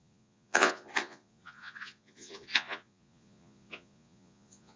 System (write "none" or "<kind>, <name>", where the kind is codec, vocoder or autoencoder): vocoder, Vocos